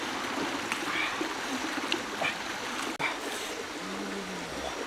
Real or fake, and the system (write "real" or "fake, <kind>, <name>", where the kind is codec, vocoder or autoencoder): real